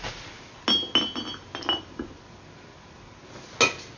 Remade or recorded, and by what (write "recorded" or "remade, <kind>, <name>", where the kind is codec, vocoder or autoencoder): recorded